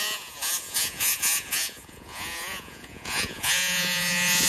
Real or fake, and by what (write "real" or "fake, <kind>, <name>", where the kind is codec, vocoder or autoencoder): fake, vocoder, Vocos